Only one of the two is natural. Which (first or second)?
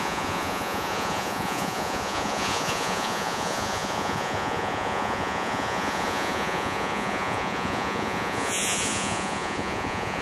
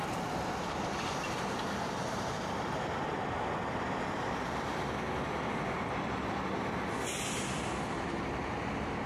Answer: second